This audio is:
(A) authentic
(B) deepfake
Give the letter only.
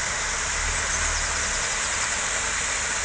A